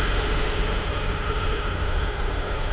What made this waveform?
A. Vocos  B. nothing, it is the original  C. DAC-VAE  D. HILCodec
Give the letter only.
C